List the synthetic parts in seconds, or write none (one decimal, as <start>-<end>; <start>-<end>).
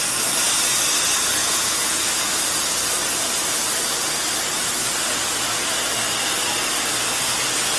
1.4-2.3